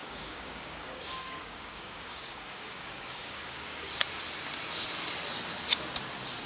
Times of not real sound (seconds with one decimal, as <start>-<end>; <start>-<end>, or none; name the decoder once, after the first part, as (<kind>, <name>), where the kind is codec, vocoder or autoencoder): 0.0-3.9 (codec, DAC)